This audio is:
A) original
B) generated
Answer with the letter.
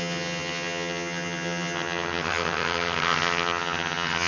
B